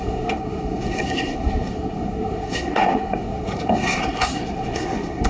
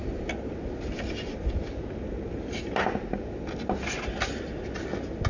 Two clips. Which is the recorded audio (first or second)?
second